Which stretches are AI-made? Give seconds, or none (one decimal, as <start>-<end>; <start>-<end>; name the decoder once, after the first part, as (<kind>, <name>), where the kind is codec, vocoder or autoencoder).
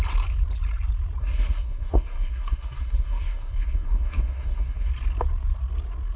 1.2-4.9 (codec, SNAC)